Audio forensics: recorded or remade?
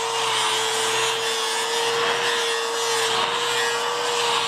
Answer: recorded